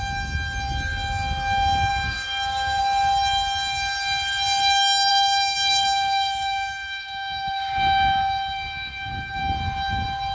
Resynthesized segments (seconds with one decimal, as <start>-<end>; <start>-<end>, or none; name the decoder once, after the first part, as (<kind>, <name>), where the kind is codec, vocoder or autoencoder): 1.9-2.8 (codec, DAC); 5.1-9.4